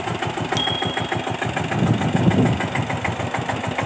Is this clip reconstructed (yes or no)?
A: no